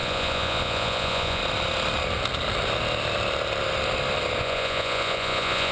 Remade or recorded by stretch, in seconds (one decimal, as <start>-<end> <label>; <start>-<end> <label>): 0.0-1.4 remade; 1.4-4.4 recorded; 4.4-5.7 remade